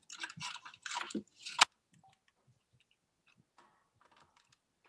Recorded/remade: recorded